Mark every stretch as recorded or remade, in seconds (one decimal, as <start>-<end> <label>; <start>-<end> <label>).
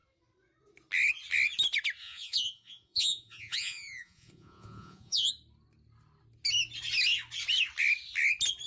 0.0-2.0 recorded; 2.0-5.3 remade; 5.3-8.7 recorded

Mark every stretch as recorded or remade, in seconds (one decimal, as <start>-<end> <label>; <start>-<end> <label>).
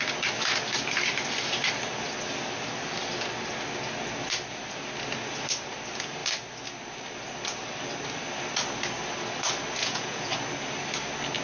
0.0-9.8 recorded; 9.8-10.3 remade; 10.3-11.4 recorded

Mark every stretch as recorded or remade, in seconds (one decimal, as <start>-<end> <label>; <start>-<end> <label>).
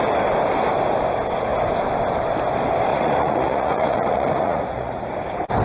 0.0-2.9 recorded; 2.9-5.0 remade; 5.0-5.6 recorded